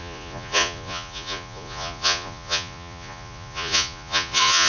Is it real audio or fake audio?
fake